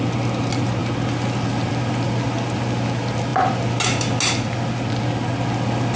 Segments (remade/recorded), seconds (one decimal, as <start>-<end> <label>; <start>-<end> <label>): 0.0-6.0 recorded